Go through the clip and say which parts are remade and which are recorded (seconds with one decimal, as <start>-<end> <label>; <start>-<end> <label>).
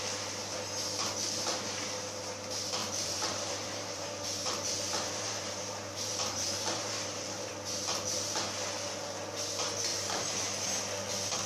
0.0-2.8 recorded; 2.8-7.5 remade; 7.5-9.9 recorded; 9.9-10.5 remade; 10.5-11.5 recorded